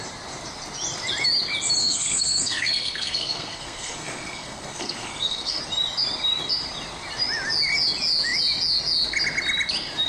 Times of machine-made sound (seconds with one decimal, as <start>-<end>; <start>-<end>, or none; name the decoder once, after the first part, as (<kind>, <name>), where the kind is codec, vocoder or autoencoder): 1.8-5.6 (codec, SNAC)